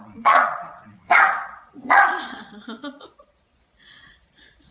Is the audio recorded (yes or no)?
no